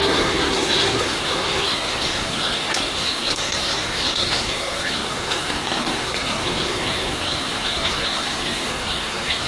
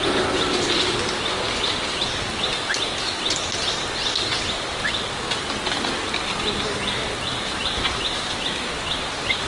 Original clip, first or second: second